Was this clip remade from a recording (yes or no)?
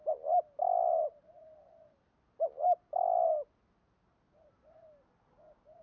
no